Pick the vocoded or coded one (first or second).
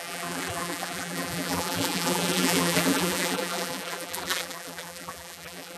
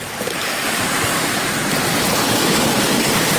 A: first